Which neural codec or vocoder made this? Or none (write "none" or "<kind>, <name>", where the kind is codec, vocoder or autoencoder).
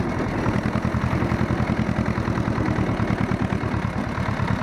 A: none